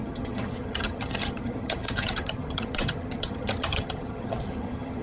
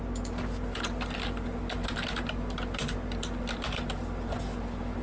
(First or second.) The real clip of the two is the second